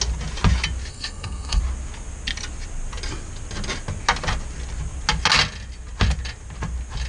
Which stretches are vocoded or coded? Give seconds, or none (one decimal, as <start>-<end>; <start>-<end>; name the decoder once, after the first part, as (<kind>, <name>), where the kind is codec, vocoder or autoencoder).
0.9-1.6 (codec, SNAC)